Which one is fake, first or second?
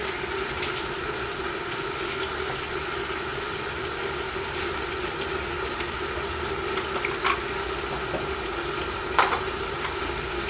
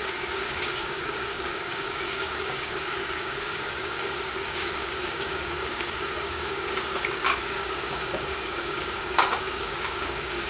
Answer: second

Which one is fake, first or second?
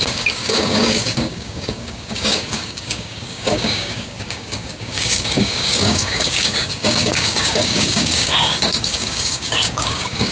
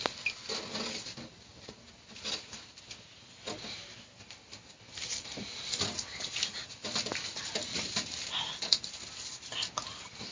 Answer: first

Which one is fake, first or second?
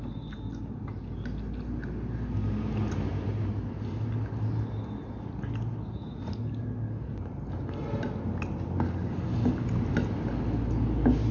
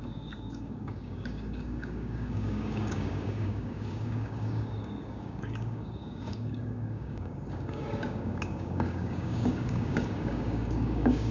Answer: second